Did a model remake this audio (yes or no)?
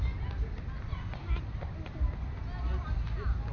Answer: no